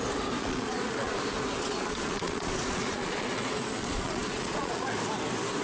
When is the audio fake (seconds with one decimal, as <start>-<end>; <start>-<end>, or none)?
0.4-1.2; 1.6-5.0